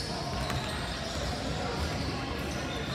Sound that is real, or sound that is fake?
real